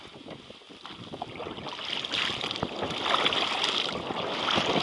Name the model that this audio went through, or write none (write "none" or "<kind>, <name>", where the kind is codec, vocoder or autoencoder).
none